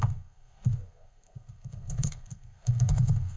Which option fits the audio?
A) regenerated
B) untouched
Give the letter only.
A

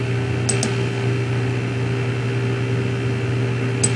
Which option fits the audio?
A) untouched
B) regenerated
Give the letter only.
A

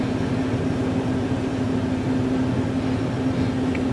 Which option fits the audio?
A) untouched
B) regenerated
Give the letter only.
A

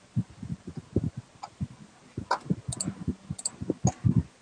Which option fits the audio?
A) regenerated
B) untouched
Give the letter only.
B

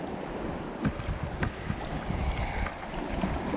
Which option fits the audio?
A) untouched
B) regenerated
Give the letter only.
A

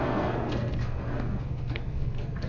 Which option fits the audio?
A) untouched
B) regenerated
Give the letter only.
B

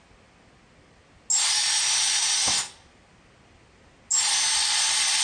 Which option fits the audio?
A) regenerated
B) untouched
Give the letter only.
B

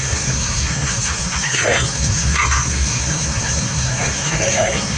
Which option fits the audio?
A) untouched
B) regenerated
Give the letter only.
B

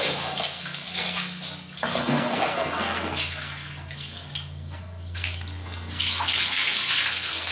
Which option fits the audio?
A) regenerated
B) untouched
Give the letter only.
A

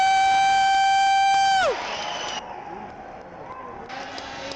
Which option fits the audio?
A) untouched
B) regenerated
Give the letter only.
A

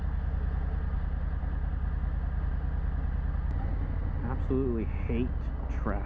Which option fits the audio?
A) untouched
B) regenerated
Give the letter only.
A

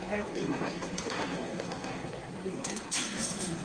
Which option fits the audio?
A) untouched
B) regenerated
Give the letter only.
B